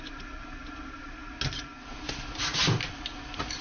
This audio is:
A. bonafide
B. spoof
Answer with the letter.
A